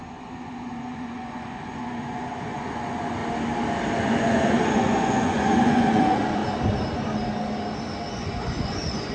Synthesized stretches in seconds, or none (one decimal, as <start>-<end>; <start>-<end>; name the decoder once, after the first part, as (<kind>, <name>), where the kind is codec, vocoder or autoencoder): 0.0-3.2 (vocoder, Vocos); 4.0-6.4; 8.1-9.1